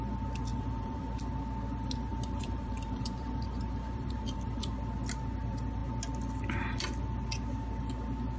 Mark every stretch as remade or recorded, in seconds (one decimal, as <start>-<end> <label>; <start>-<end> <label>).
0.0-0.5 recorded; 0.5-1.1 remade; 1.1-2.1 recorded; 2.1-4.7 remade; 4.7-8.4 recorded